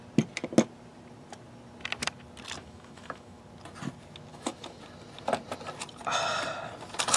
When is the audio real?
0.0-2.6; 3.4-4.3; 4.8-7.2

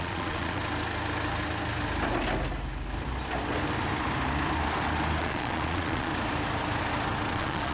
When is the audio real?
0.6-5.2; 6.1-7.3

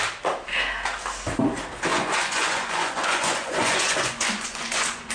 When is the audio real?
0.0-1.9

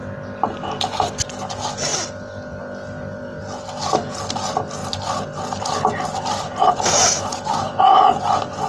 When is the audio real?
0.0-1.9; 2.6-8.7

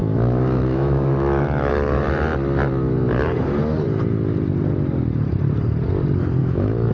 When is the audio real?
1.7-6.4

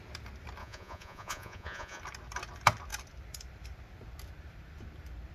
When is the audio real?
0.0-0.6; 2.0-5.3

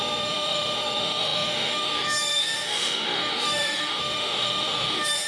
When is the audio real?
none

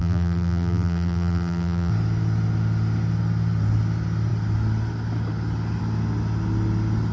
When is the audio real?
1.9-7.1